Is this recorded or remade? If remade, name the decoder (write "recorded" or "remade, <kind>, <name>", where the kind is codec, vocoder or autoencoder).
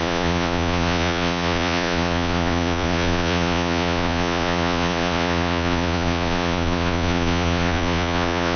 remade, vocoder, Vocos